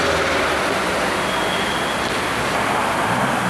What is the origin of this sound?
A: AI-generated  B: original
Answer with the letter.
B